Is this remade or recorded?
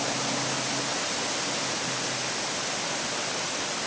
recorded